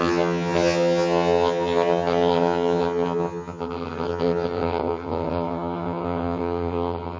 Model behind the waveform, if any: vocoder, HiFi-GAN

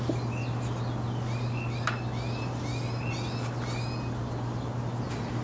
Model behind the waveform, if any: none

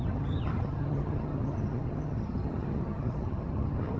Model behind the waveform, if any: vocoder, HiFi-GAN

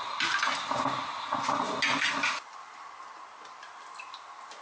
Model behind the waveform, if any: none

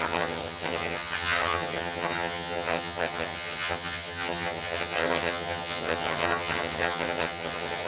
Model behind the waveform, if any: vocoder, HiFi-GAN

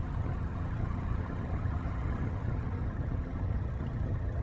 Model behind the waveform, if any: vocoder, HiFi-GAN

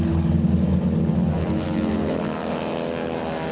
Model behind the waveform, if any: none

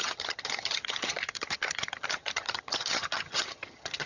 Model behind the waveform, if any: vocoder, HiFi-GAN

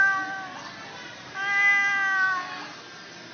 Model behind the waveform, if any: none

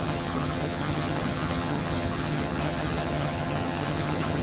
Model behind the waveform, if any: vocoder, HiFi-GAN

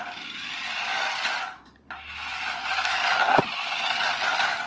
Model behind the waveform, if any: none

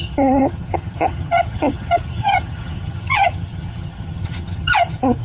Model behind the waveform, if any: vocoder, HiFi-GAN